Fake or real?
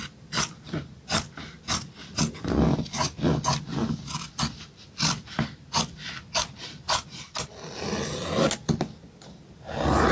real